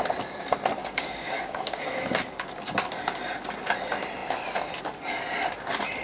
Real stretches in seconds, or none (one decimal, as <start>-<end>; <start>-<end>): 0.0-0.8; 2.2-6.0